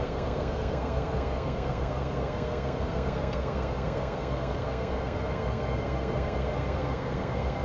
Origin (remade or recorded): remade